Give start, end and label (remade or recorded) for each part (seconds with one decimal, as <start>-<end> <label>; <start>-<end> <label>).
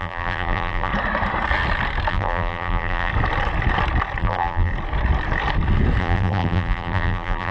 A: 0.0-0.9 remade; 0.9-2.1 recorded; 2.1-3.1 remade; 3.1-4.2 recorded; 4.2-4.7 remade; 4.7-6.0 recorded; 6.0-7.5 remade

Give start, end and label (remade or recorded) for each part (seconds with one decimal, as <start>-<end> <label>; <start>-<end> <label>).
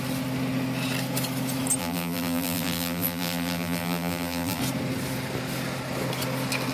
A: 0.0-1.8 recorded; 1.8-4.6 remade; 4.6-6.7 recorded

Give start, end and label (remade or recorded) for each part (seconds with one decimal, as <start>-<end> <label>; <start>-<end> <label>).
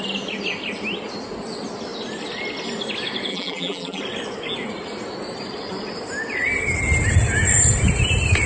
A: 0.0-3.3 recorded; 3.3-4.0 remade; 4.0-8.5 recorded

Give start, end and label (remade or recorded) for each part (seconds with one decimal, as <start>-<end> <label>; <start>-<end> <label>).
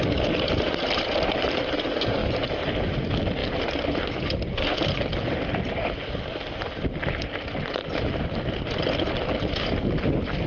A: 0.0-10.5 recorded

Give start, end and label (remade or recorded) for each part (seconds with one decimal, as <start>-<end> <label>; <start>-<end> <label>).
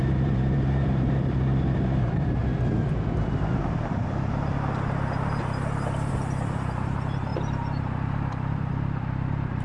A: 0.0-2.4 remade; 2.4-6.1 recorded; 6.1-9.6 remade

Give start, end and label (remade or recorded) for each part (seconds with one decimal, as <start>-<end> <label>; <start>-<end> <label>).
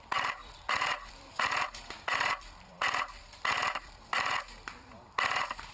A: 0.0-4.9 remade; 4.9-5.7 recorded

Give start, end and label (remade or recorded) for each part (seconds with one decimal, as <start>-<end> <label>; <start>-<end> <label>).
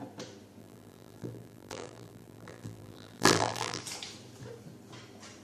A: 0.0-0.6 recorded; 0.6-3.8 remade; 3.8-5.4 recorded